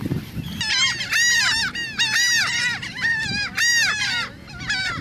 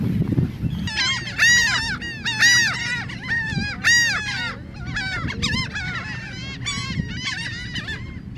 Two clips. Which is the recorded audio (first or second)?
second